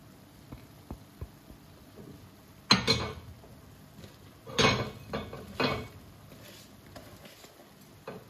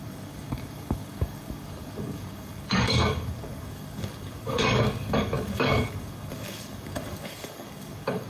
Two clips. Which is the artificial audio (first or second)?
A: second